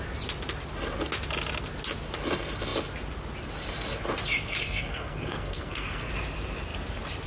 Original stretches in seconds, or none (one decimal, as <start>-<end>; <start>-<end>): 0.0-4.5; 6.1-7.3